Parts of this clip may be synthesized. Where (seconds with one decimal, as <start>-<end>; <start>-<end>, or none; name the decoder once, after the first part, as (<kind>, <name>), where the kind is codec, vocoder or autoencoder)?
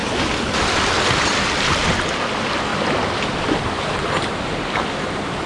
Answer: 0.5-2.7 (vocoder, BigVGAN v2); 3.3-5.5